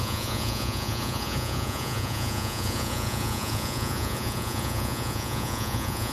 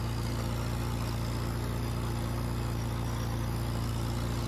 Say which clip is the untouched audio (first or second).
second